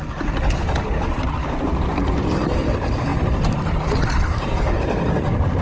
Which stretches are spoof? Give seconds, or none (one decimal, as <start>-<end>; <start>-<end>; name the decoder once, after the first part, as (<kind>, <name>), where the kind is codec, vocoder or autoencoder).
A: 3.1-4.8 (vocoder, BigVGAN v2)